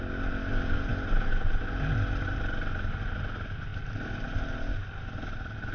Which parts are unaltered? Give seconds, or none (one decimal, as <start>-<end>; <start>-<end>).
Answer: 0.0-5.7